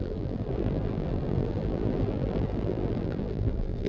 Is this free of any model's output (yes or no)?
no